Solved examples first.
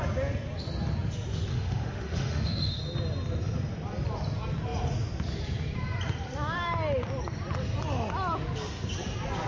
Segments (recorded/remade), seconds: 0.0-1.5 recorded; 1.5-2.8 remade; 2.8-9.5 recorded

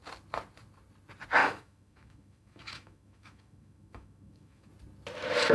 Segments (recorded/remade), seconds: 0.0-1.4 recorded; 1.4-4.7 remade; 4.7-5.5 recorded

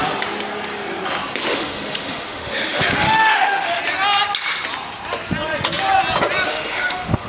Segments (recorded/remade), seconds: 0.0-1.5 recorded; 1.5-3.8 remade; 3.8-6.5 recorded; 6.5-7.3 remade